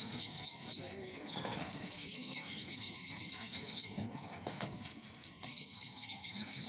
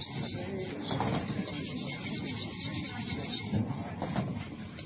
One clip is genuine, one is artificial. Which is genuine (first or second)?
second